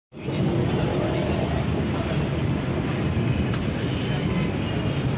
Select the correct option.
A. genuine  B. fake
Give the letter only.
B